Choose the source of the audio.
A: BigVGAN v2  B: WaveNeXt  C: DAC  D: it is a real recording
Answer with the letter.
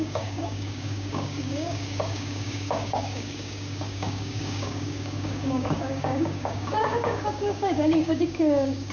C